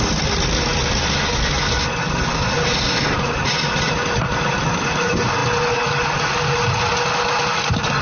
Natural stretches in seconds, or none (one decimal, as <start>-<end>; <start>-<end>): 0.0-8.0

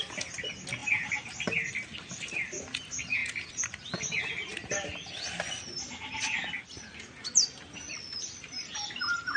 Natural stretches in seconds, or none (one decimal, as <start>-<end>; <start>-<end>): 0.0-9.4

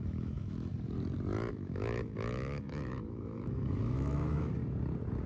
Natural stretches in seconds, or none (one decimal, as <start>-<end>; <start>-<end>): 0.7-1.5; 4.6-5.3

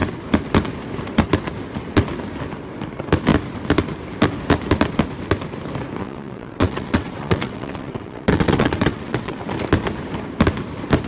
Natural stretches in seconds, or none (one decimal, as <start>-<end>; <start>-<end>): 0.0-6.0; 9.5-11.1